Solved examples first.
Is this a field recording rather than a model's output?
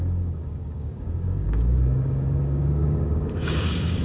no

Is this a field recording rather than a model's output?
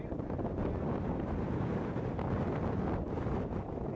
yes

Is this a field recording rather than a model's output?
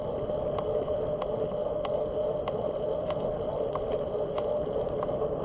yes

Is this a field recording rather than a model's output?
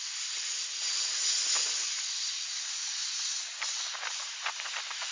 yes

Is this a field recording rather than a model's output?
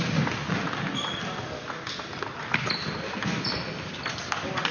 yes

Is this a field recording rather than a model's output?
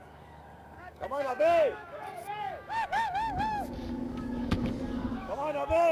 no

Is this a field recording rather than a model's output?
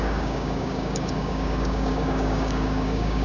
no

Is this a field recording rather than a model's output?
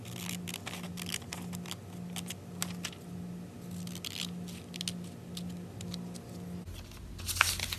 yes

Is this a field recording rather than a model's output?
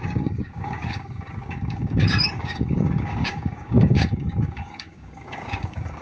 no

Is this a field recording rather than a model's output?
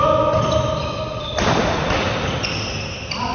yes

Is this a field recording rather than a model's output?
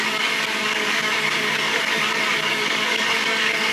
no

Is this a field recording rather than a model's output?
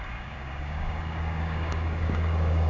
no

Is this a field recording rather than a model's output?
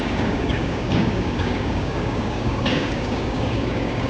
no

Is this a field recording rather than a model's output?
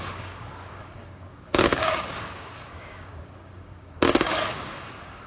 no